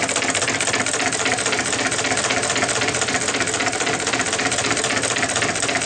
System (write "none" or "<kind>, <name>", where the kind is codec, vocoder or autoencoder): none